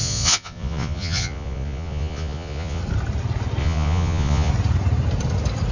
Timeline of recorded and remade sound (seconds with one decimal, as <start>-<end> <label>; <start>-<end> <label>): 0.0-2.8 remade; 2.8-3.6 recorded; 3.6-4.5 remade; 4.5-5.7 recorded